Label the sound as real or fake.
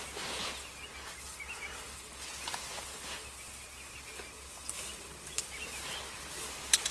real